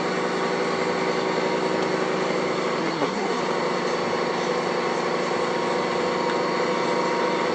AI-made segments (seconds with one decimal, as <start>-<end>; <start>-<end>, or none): 2.8-3.4